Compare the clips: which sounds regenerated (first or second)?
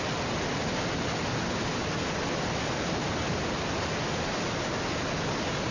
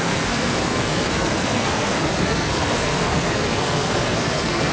second